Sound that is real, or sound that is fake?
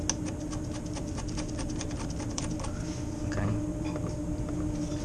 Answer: real